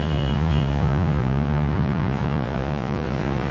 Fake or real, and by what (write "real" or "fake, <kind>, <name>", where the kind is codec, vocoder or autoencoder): fake, vocoder, Vocos